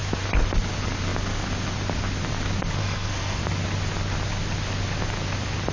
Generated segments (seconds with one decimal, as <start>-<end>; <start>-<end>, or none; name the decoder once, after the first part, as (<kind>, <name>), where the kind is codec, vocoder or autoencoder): 2.8-3.4 (codec, SNAC)

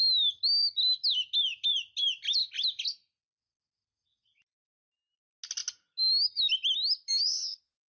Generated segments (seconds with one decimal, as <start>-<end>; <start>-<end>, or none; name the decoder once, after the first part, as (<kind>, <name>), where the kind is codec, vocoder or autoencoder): none

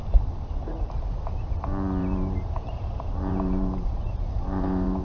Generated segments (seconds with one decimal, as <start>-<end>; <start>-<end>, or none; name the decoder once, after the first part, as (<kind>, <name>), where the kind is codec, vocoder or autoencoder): 0.0-0.9 (vocoder, BigVGAN v2); 2.0-5.0

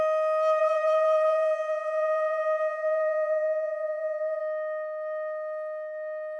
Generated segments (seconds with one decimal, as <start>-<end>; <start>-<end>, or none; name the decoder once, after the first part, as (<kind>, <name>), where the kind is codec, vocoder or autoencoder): 0.6-4.4 (vocoder, Vocos)

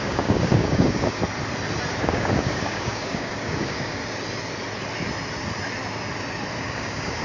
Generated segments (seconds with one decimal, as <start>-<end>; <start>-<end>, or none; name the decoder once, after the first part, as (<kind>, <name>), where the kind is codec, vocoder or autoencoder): 0.0-1.2 (codec, DAC); 2.0-4.0; 6.6-7.2